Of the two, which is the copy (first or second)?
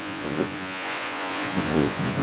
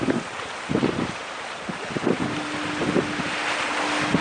first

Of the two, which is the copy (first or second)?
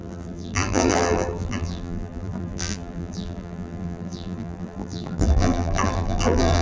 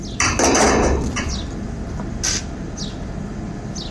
first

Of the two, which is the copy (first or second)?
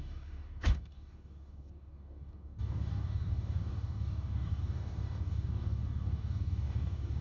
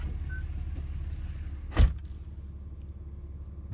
first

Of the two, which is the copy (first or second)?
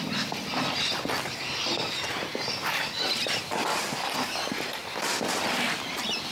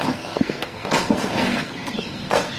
second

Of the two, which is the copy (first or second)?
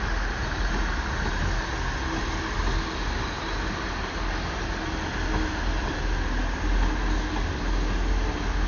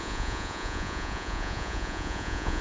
second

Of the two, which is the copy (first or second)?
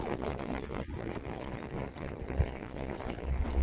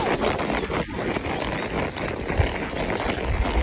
first